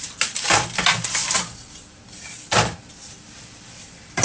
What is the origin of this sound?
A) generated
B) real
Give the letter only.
A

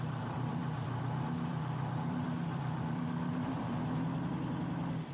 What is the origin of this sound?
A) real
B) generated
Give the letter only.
B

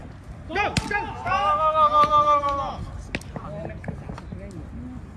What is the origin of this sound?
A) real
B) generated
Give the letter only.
A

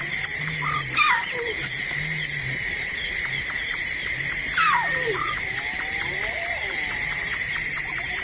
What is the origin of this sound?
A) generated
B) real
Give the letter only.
A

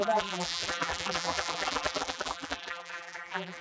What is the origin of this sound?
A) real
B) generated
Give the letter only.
B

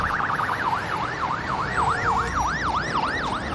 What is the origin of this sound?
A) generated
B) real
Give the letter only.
A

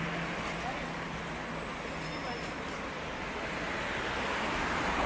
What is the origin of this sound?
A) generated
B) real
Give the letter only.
B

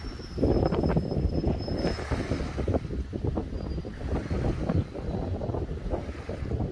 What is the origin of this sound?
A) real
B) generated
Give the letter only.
B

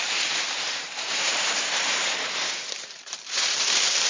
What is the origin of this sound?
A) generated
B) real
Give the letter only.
A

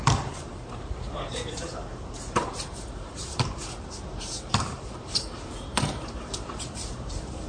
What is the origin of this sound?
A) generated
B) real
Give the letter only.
A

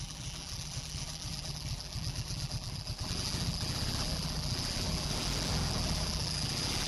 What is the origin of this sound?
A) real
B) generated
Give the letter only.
B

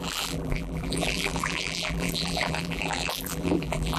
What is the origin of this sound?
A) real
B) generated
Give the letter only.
B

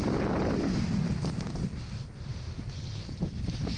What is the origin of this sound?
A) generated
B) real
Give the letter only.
B